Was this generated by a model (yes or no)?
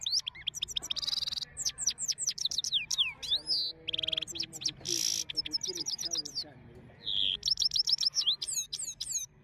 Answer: no